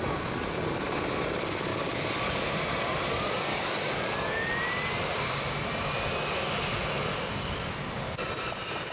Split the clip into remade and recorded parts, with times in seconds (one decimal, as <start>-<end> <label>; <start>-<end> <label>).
0.0-1.7 recorded; 1.7-2.4 remade; 2.4-3.5 recorded; 3.5-4.6 remade; 4.6-7.1 recorded; 7.1-7.7 remade; 7.7-8.9 recorded